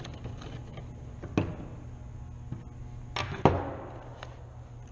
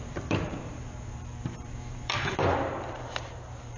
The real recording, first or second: first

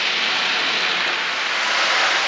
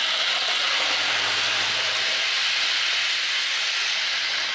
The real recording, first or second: second